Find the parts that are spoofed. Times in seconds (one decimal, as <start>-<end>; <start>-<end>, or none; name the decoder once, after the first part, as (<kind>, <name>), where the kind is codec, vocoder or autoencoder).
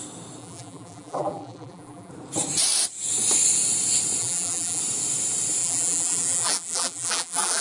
0.4-2.1 (vocoder, BigVGAN v2); 4.2-4.8; 5.6-7.6